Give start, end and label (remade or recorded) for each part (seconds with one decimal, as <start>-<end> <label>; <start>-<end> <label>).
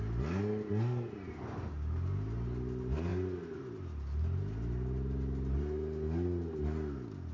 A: 0.0-7.3 recorded